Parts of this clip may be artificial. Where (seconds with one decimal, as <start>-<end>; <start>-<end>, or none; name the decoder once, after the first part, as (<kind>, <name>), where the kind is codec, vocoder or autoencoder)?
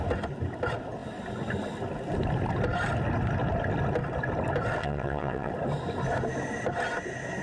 4.8-5.5 (vocoder, WaveNeXt)